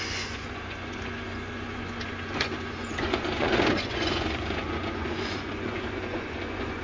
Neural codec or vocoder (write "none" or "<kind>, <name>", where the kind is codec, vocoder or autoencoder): vocoder, Vocos